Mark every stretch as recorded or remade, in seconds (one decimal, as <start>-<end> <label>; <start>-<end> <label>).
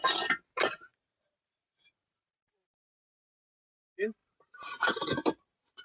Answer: 0.0-0.6 recorded; 0.6-5.8 remade